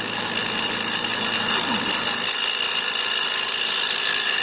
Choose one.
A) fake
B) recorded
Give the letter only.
B